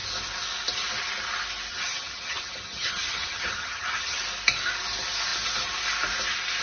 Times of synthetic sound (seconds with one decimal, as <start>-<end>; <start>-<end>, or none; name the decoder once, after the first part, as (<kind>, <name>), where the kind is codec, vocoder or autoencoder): 1.7-4.2 (vocoder, HiFi-GAN)

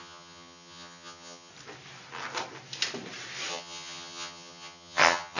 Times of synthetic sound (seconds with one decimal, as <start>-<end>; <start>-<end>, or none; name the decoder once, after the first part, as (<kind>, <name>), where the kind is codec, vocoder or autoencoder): 0.0-1.5 (vocoder, HiFi-GAN); 3.5-5.4

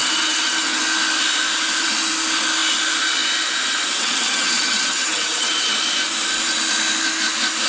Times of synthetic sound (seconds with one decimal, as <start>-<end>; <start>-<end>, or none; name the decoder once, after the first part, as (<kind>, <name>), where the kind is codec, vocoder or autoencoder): 0.0-0.8 (vocoder, HiFi-GAN); 4.0-5.7